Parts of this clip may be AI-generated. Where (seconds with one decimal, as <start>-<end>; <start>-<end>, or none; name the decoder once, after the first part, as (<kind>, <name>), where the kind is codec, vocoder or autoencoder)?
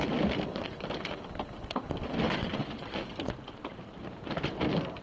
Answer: 3.6-4.5 (vocoder, BigVGAN v2)